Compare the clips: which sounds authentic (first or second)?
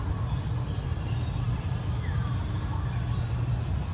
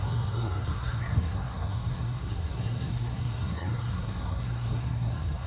first